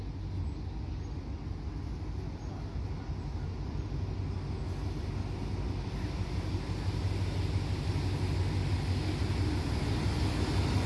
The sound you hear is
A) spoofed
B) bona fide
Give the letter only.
B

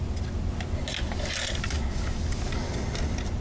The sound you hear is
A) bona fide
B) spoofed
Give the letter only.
A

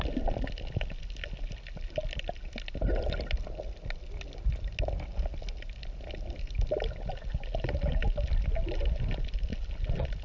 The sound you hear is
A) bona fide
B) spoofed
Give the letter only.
A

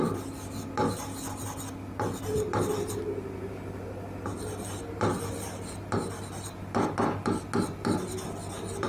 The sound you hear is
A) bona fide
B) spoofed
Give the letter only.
A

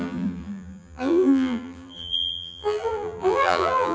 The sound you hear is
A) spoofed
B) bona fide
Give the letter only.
A